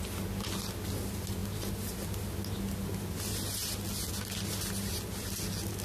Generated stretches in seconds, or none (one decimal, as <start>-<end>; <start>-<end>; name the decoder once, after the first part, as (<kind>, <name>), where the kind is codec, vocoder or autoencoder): none